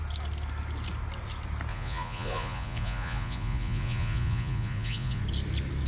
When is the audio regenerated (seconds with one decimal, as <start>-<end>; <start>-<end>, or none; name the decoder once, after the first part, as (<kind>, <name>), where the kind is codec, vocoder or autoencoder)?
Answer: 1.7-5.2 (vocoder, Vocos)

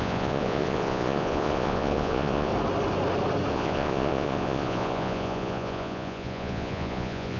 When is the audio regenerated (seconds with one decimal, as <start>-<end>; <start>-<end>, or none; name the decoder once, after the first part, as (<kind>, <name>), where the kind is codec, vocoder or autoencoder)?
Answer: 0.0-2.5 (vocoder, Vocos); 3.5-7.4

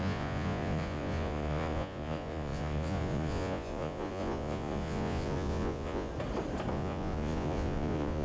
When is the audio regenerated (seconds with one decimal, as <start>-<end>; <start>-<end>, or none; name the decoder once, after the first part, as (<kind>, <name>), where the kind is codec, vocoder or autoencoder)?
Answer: 0.0-6.1 (vocoder, Vocos); 6.7-8.2

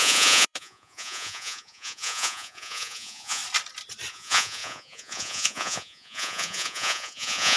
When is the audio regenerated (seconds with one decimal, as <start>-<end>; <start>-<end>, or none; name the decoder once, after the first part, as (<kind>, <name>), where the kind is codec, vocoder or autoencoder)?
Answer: 0.0-3.4 (vocoder, Vocos); 4.1-7.6

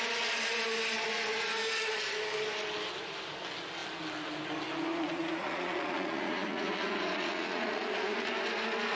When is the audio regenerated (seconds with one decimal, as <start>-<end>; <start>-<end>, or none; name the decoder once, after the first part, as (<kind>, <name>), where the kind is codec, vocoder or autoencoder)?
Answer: 4.9-8.3 (vocoder, Vocos)

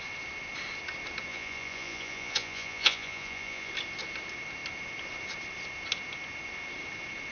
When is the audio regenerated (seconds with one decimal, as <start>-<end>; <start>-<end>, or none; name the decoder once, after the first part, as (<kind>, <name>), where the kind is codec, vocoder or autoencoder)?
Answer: 1.3-3.7 (vocoder, Vocos)

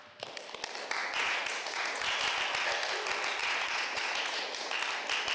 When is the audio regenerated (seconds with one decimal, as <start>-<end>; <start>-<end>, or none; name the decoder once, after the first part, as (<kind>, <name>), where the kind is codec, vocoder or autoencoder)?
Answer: 1.0-2.2 (vocoder, Vocos); 3.4-4.7